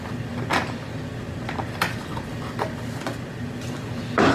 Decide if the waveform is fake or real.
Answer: real